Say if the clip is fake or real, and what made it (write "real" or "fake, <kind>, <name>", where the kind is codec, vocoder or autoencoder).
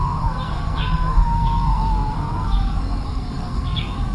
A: fake, codec, SNAC